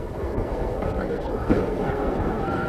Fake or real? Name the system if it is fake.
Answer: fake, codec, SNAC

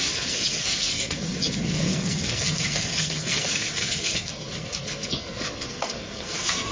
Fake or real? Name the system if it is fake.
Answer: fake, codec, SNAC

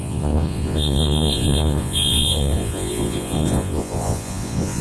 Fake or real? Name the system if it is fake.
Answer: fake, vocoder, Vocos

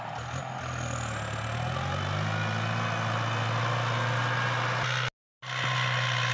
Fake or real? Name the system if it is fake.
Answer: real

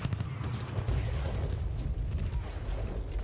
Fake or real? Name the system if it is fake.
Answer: real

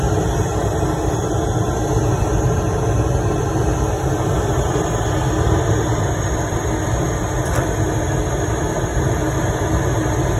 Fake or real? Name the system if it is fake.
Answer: real